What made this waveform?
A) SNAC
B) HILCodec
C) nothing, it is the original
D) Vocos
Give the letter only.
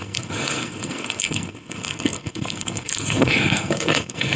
A